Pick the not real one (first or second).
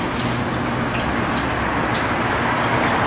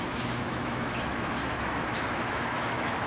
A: second